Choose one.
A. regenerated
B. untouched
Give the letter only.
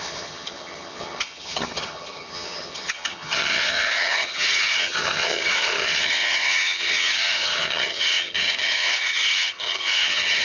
A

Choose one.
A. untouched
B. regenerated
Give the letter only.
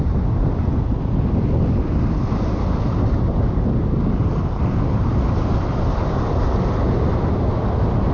A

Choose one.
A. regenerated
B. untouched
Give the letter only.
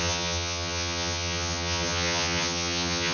A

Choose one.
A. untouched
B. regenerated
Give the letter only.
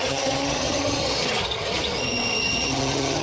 B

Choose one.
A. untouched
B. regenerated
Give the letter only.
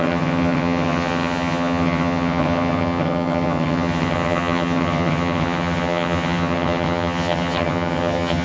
B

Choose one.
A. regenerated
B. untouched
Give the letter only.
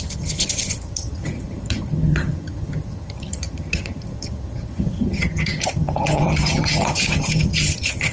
A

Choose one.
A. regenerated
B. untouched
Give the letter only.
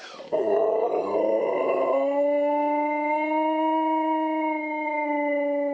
B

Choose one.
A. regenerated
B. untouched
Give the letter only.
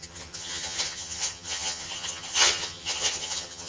A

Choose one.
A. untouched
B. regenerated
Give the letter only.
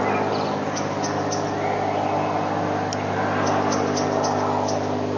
A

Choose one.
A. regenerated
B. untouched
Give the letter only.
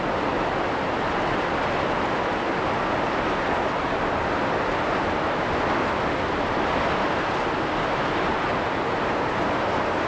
B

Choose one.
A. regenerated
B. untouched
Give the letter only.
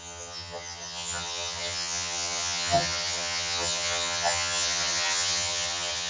A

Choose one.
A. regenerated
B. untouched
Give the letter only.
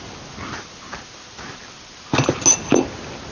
B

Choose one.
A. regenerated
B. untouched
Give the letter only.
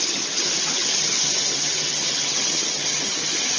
A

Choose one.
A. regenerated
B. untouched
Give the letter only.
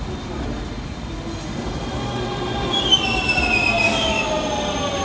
B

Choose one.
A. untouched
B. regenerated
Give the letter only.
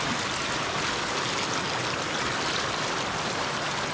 A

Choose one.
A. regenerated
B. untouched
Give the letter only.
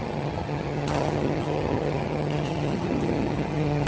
A